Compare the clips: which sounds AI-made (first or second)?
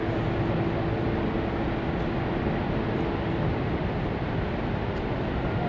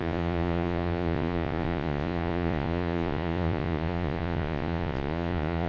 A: second